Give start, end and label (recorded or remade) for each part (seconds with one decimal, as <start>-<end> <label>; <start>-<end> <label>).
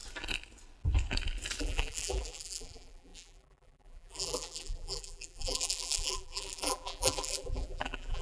0.0-1.6 recorded; 1.6-8.2 remade